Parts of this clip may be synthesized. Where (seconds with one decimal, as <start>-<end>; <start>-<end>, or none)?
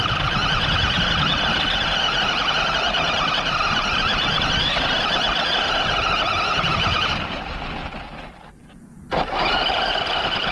none